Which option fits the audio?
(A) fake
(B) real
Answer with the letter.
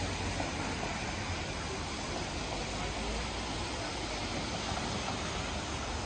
B